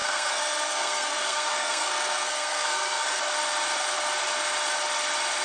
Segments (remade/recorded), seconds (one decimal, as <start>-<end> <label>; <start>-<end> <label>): 0.0-3.2 remade; 3.2-5.4 recorded